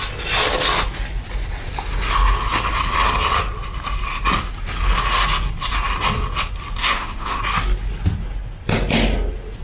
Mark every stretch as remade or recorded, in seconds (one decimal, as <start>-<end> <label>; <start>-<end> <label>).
0.0-6.8 recorded; 6.8-7.4 remade; 7.4-9.6 recorded